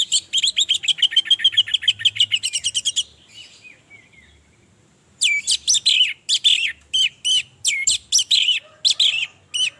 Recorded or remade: recorded